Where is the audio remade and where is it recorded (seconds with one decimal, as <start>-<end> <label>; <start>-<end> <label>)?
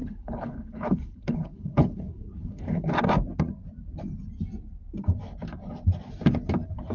0.0-2.9 remade; 2.9-6.9 recorded